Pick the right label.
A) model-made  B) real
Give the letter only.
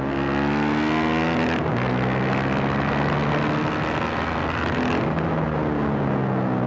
B